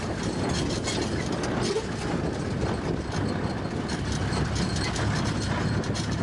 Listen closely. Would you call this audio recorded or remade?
recorded